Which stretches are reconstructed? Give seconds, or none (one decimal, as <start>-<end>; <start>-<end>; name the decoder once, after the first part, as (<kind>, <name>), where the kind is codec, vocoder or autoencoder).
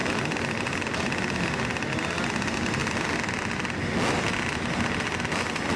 none